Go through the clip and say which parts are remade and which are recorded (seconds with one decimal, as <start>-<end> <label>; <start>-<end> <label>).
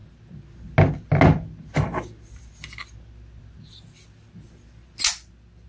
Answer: 0.0-5.7 recorded